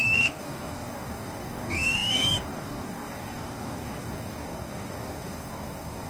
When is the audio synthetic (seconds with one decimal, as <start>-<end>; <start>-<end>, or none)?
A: 0.0-6.1

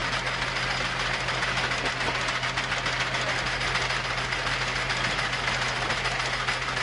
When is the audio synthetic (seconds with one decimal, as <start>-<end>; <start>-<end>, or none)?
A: none

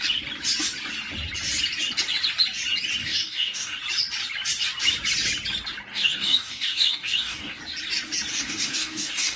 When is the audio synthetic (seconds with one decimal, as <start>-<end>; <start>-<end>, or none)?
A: 3.0-3.8; 5.9-7.6; 8.3-9.4

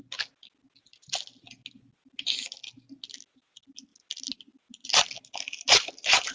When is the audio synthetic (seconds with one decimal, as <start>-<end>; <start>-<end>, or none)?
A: none

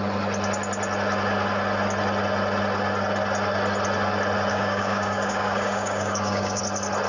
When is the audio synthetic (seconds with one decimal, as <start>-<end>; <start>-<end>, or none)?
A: 4.5-6.6

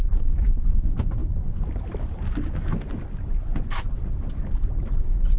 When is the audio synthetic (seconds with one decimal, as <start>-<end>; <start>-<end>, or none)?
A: none

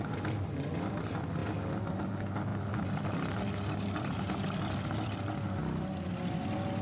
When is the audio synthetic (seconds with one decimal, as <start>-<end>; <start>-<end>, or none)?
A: none

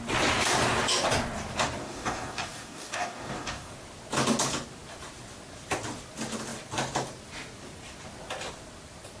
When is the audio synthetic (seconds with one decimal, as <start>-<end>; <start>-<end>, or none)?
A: 1.8-3.7